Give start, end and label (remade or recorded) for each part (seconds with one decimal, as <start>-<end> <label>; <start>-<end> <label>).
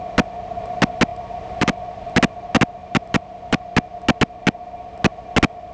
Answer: 0.0-1.1 recorded; 1.1-2.1 remade; 2.1-2.8 recorded; 2.8-3.6 remade; 3.6-5.7 recorded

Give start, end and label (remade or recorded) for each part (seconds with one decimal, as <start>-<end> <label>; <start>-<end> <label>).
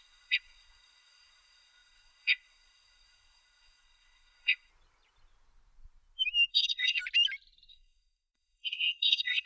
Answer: 0.0-4.7 remade; 4.7-6.5 recorded; 6.5-7.0 remade; 7.0-7.7 recorded; 7.7-9.5 remade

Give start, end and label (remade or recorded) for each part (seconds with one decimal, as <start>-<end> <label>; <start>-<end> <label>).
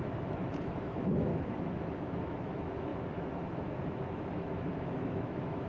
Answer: 0.0-5.7 remade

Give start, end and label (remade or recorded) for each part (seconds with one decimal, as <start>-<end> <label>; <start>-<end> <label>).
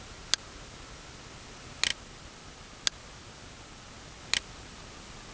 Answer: 0.0-5.3 recorded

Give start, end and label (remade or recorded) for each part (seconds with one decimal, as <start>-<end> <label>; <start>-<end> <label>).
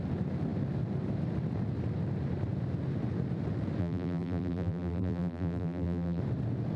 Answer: 0.0-3.8 recorded; 3.8-6.2 remade; 6.2-6.8 recorded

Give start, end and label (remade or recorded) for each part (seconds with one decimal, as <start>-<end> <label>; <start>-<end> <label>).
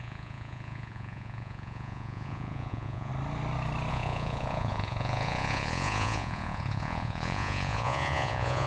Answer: 0.0-3.1 remade; 3.1-3.9 recorded; 3.9-8.7 remade